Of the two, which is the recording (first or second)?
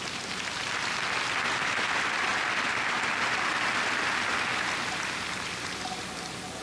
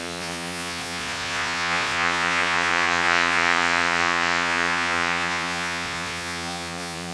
first